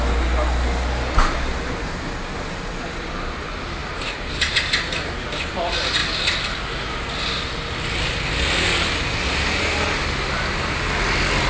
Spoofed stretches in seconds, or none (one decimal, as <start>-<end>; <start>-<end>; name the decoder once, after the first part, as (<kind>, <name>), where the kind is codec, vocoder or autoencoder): none

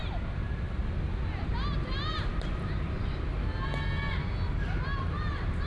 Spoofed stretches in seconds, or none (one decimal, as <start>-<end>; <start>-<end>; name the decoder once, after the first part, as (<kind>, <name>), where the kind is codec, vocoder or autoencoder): none

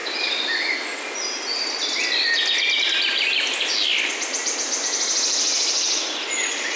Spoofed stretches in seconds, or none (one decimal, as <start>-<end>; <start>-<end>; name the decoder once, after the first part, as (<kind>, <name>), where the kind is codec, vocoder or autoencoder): none